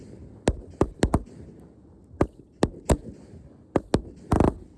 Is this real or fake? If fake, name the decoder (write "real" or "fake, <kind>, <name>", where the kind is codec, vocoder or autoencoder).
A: real